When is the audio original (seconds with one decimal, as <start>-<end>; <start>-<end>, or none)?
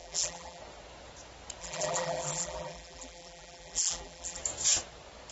0.6-1.6; 4.4-5.3